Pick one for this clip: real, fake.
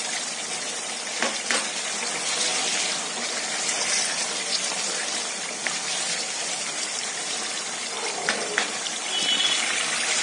real